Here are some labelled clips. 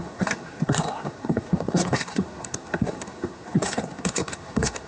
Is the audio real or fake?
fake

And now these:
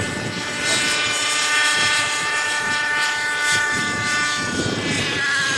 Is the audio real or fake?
real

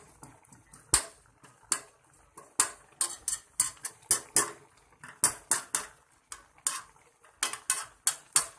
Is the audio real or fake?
real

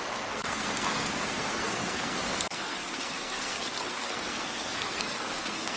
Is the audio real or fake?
fake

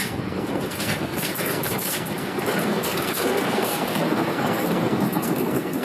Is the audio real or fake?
fake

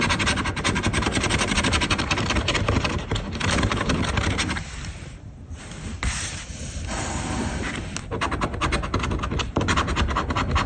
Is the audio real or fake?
real